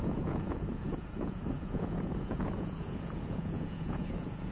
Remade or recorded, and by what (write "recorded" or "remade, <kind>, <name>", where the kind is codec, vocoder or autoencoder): remade, vocoder, Vocos